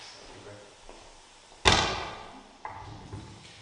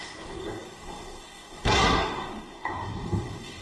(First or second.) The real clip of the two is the first